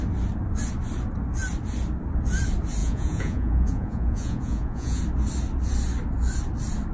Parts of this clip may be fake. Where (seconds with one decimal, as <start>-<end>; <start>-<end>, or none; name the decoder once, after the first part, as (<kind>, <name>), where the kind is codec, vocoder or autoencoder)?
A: 2.8-5.0 (vocoder, Vocos)